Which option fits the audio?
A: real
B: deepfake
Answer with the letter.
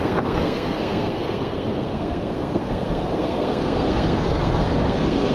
B